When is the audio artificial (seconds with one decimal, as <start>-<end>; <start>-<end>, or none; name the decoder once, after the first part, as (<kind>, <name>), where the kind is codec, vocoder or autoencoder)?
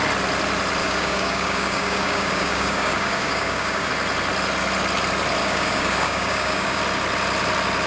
0.8-3.9 (codec, DAC); 5.4-6.8